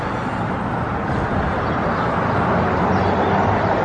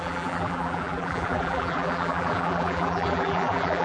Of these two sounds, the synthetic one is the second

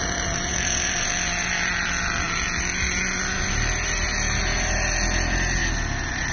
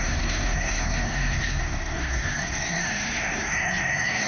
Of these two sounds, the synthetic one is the second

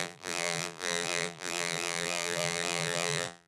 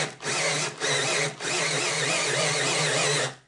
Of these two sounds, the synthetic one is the first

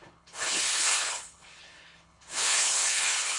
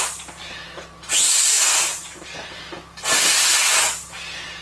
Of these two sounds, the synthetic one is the first